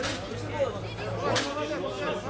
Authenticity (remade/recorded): recorded